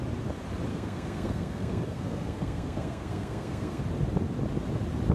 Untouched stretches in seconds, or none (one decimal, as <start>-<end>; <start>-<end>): 0.0-0.7; 3.8-5.1